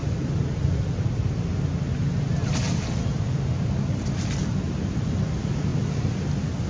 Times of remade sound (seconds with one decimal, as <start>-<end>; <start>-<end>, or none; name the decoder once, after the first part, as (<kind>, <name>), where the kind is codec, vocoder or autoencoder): none